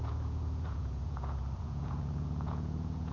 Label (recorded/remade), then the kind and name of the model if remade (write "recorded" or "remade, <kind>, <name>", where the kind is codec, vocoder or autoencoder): remade, vocoder, Vocos